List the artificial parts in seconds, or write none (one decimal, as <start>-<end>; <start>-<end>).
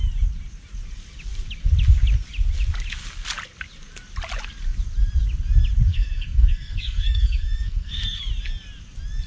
5.9-8.2